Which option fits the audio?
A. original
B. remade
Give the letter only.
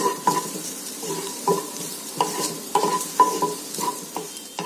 B